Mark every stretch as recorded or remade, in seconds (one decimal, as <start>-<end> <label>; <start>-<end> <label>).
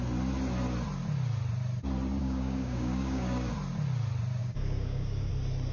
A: 0.0-2.2 recorded; 2.2-3.5 remade; 3.5-4.4 recorded; 4.4-5.3 remade; 5.3-5.7 recorded